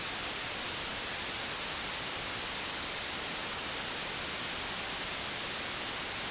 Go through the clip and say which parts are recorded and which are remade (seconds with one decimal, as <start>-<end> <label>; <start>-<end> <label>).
0.0-6.3 recorded